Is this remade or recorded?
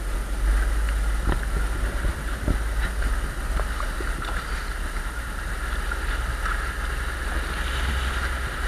recorded